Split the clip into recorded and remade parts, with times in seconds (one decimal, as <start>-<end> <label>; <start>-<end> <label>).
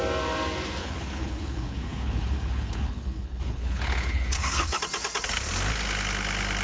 0.0-0.8 recorded; 0.8-4.8 remade; 4.8-6.6 recorded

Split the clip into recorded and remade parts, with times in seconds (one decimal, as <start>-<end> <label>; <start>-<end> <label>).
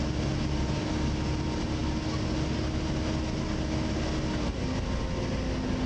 0.0-5.9 recorded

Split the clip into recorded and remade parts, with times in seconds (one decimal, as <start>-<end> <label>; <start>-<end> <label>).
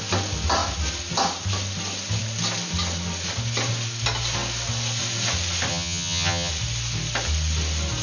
0.0-5.7 recorded; 5.7-6.5 remade; 6.5-8.0 recorded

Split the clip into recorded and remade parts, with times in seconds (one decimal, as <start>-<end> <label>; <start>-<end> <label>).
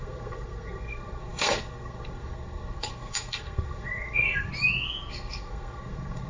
0.0-4.5 remade; 4.5-5.1 recorded; 5.1-6.3 remade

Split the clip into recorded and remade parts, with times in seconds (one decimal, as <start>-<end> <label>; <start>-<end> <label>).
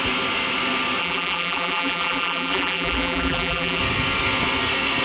0.0-1.0 recorded; 1.0-3.8 remade; 3.8-5.0 recorded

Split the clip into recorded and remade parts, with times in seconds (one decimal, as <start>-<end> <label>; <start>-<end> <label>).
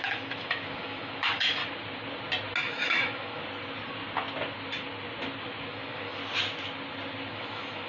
0.0-1.6 remade; 1.6-2.6 recorded; 2.6-3.4 remade; 3.4-5.7 recorded; 5.7-6.2 remade; 6.2-7.3 recorded; 7.3-7.9 remade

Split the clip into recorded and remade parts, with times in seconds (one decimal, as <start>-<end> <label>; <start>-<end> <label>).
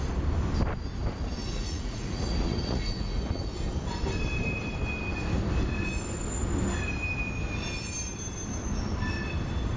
0.0-1.4 recorded; 1.4-3.5 remade; 3.5-9.8 recorded